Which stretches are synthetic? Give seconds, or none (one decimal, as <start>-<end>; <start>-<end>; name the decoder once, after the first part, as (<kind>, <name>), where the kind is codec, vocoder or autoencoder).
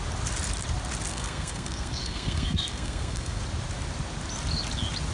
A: 1.1-3.4 (codec, SNAC)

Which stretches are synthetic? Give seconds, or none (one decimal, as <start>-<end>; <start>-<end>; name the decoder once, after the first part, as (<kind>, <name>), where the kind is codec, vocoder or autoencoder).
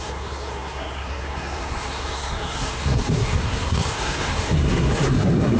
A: 0.0-5.6 (codec, SNAC)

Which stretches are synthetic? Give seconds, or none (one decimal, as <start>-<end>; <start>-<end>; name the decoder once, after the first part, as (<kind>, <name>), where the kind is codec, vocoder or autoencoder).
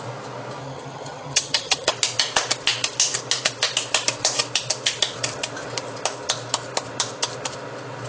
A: 0.6-1.9 (vocoder, HiFi-GAN)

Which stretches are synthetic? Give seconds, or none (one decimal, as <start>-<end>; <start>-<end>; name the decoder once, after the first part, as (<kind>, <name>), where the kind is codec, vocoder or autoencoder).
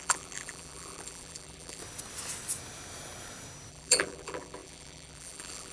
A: 0.0-1.8 (vocoder, BigVGAN v2); 3.7-5.7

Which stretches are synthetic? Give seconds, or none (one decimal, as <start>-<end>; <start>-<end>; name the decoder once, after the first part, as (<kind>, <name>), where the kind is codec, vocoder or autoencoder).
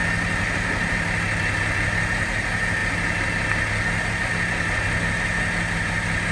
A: none